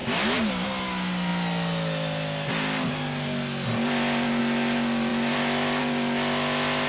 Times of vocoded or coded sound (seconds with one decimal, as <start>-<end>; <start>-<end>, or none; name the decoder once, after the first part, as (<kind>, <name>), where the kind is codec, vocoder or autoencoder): none